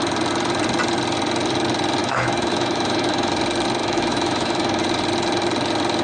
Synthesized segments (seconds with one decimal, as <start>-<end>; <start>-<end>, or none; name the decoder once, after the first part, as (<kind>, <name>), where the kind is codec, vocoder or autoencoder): 2.0-3.3 (autoencoder, DAC-VAE); 3.8-4.8